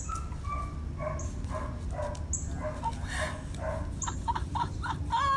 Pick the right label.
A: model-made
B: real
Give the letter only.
B